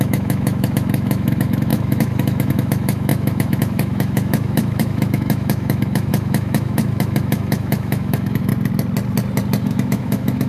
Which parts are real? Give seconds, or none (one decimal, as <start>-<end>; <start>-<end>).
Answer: 8.5-9.6